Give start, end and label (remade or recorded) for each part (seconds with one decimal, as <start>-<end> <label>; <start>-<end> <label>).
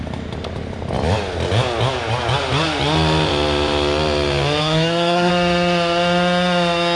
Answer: 0.0-4.6 recorded; 4.6-5.3 remade; 5.3-7.0 recorded